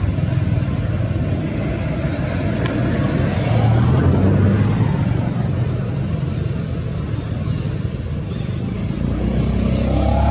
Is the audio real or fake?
real